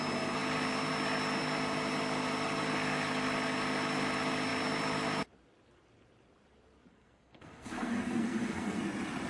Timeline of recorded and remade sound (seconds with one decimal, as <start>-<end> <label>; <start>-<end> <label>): 0.0-6.9 recorded; 6.9-8.8 remade; 8.8-9.3 recorded